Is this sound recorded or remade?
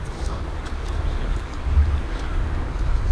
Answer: remade